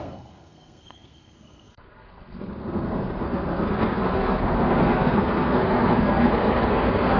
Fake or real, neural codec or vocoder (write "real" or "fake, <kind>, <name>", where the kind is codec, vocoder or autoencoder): fake, codec, SNAC